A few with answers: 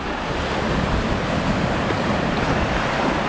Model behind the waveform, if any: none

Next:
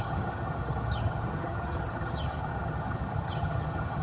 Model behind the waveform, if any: vocoder, HiFi-GAN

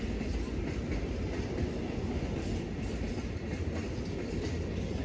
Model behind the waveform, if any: none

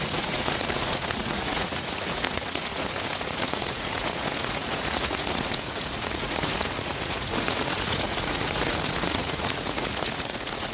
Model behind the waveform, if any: vocoder, Vocos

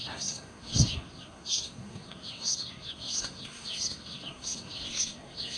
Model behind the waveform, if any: codec, SNAC